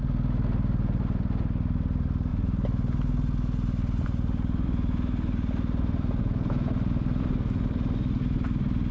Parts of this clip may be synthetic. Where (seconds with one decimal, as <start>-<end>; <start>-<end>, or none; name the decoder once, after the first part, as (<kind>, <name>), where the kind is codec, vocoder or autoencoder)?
none